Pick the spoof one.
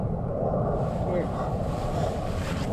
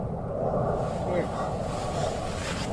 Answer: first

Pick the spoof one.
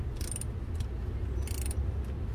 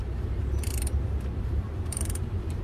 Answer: second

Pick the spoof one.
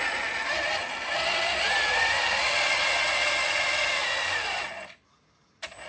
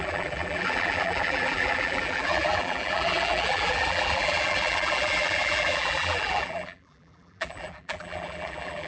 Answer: second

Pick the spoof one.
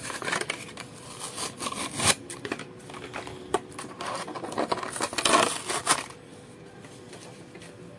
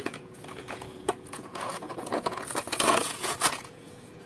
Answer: second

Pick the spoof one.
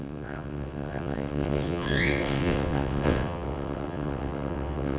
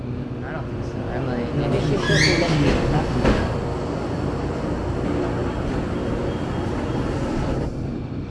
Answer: first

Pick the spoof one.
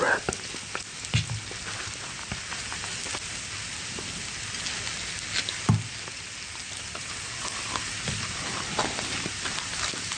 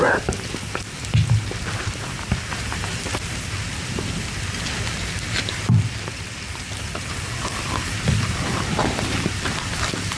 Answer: second